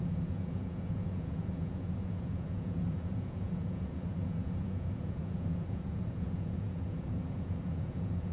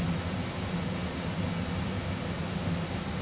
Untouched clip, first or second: second